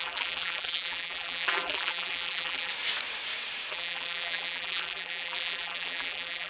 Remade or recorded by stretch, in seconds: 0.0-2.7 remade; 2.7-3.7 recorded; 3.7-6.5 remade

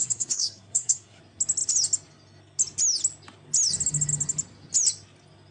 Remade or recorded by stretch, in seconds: 0.0-1.2 remade; 1.2-5.5 recorded

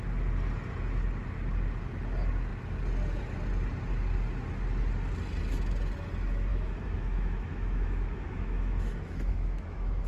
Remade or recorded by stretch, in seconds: 0.0-6.5 recorded; 6.5-10.1 remade

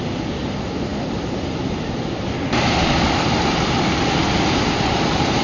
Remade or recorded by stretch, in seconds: 0.0-5.4 recorded

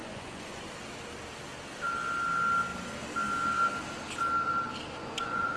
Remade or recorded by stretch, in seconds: 0.0-0.7 remade; 0.7-5.0 recorded; 5.0-5.6 remade

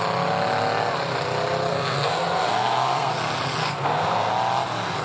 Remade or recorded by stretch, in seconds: 0.0-1.7 recorded; 1.7-3.1 remade; 3.1-3.6 recorded; 3.6-4.3 remade; 4.3-5.0 recorded

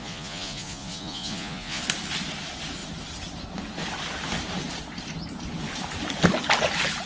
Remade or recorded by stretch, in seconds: 0.0-1.8 remade; 1.8-7.1 recorded

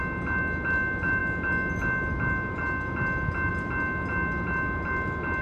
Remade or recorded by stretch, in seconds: 0.0-5.4 recorded